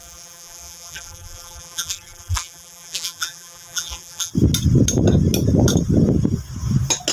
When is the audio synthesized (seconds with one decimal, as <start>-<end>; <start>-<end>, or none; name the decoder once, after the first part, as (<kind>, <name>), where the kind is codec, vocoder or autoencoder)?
0.0-4.3 (vocoder, BigVGAN v2)